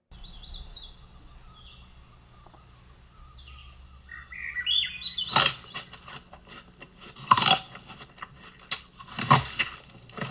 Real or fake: real